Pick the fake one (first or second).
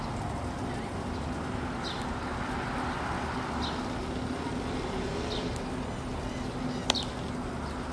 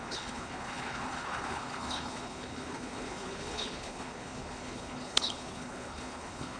second